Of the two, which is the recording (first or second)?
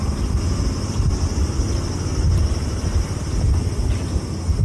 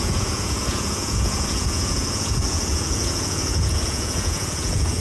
first